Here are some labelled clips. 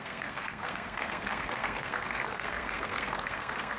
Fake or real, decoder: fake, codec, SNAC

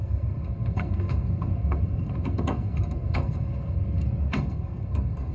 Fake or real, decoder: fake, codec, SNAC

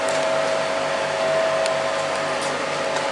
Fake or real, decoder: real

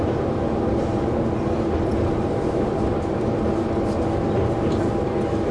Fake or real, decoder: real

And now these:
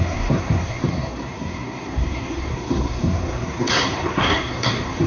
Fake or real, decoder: fake, codec, SNAC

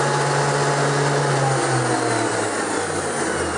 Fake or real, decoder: real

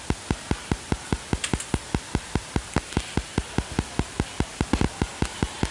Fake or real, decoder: real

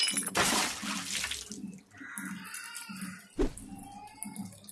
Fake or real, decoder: real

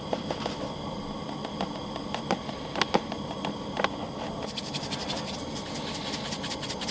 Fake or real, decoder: real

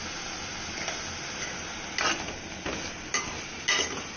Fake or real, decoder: real